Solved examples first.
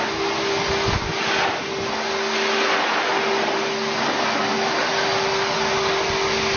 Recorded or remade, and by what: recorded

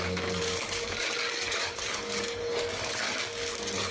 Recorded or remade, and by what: remade, codec, DAC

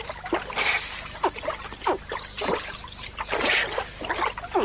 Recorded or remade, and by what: recorded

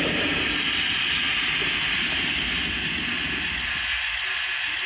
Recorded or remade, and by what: recorded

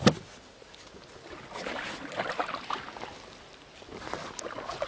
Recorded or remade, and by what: recorded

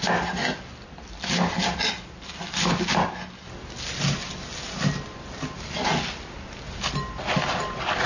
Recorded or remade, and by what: recorded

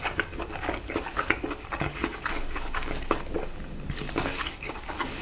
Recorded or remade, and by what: remade, codec, DAC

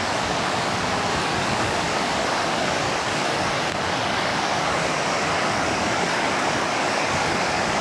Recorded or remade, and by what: remade, codec, DAC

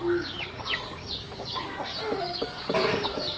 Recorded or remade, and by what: remade, codec, DAC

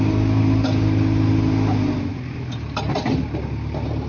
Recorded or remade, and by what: recorded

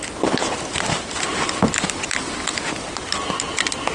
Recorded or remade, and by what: recorded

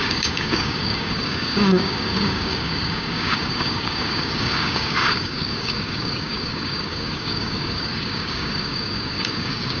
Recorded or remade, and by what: remade, codec, DAC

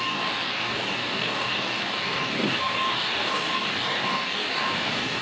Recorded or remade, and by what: remade, codec, DAC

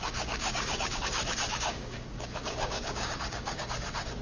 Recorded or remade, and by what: remade, codec, DAC